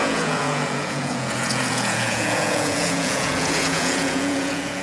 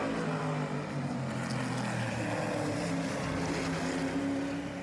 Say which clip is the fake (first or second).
first